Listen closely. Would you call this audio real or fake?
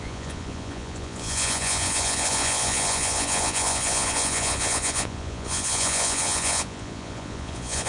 fake